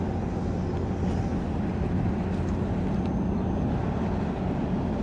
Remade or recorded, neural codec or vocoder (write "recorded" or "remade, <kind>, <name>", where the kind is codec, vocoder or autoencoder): recorded